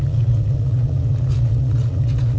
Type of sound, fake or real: fake